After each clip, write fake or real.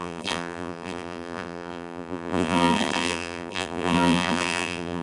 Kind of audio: fake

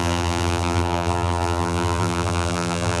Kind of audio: fake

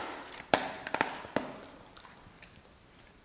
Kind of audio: real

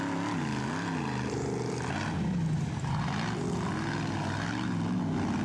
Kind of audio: real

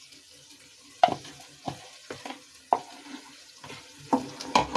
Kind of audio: real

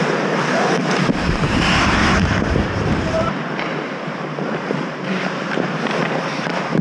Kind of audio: fake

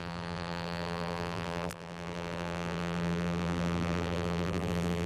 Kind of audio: fake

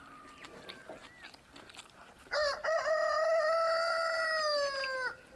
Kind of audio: real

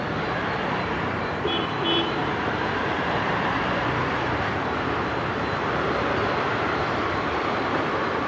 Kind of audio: fake